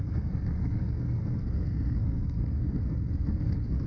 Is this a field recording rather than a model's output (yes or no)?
no